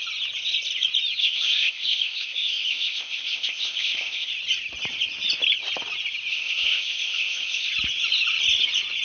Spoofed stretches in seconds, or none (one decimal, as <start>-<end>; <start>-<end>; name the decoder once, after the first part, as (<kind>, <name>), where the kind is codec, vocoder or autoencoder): 1.2-4.3 (codec, ZipCodec); 6.3-7.7